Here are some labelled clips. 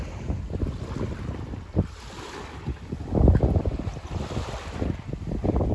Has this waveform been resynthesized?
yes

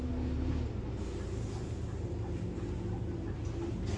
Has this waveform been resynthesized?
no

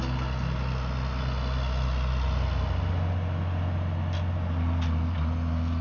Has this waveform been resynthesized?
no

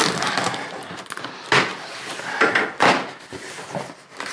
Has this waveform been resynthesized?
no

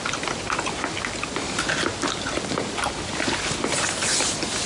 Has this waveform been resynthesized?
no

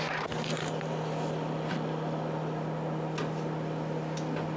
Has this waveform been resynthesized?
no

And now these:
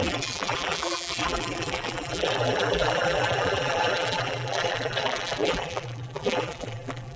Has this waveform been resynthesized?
yes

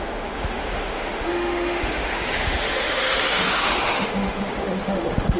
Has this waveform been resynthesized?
yes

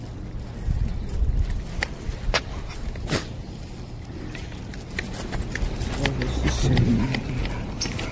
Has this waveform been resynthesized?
no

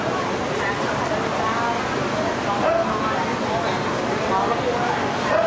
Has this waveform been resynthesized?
no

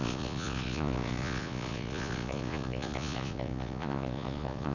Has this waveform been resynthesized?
yes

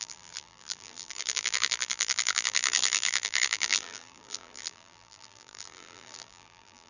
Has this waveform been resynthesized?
yes